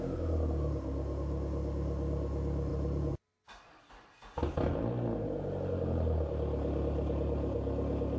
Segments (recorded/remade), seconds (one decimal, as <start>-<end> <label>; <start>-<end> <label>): 0.0-2.7 recorded; 2.7-3.2 remade; 3.2-8.2 recorded